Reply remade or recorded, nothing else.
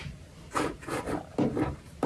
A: remade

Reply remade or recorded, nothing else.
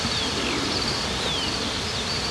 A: recorded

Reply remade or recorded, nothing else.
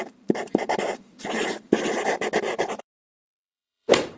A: remade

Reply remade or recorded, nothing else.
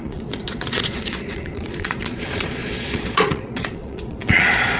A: remade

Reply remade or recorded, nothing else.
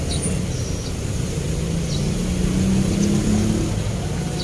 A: recorded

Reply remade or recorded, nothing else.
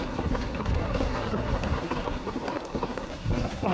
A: remade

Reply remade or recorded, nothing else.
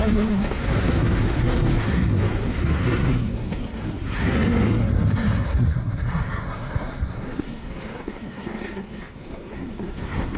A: remade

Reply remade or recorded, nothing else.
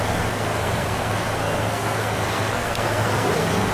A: remade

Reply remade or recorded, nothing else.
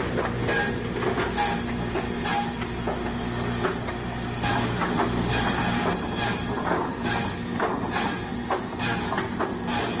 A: recorded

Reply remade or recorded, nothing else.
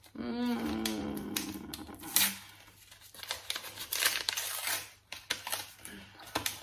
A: recorded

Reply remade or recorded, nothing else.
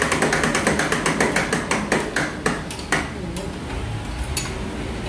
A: recorded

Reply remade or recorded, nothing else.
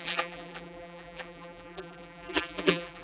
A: remade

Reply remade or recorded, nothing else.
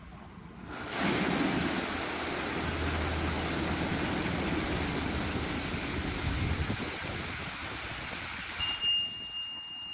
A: recorded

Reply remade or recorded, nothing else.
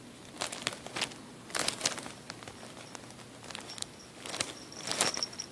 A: recorded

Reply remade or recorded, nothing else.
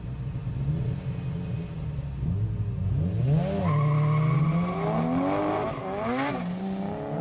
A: recorded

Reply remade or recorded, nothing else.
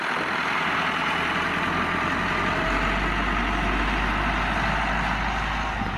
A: recorded